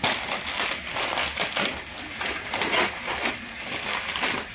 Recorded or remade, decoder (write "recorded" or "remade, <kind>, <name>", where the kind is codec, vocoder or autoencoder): recorded